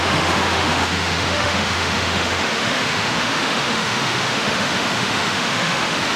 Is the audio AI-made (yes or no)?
yes